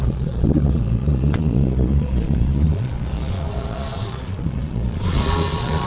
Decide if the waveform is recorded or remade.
remade